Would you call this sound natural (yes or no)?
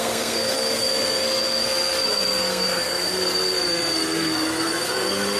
no